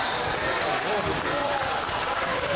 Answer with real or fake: fake